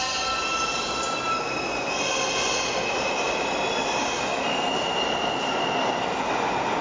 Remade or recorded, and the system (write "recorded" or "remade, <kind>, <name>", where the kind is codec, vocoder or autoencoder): recorded